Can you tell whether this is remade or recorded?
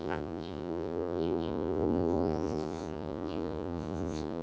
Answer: remade